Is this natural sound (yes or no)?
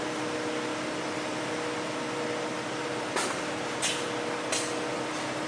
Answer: yes